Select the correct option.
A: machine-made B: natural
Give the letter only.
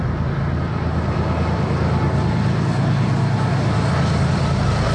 B